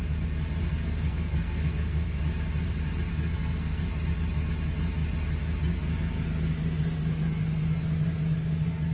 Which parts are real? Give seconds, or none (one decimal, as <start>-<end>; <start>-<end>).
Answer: 0.0-0.6; 2.2-3.1; 3.8-8.9